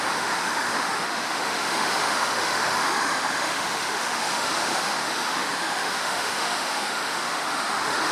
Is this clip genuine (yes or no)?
no